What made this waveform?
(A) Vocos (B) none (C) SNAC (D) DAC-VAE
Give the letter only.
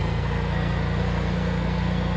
C